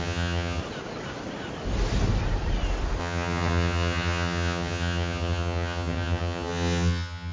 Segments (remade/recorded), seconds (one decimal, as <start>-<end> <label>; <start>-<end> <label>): 0.0-0.6 remade; 0.6-3.0 recorded; 3.0-7.3 remade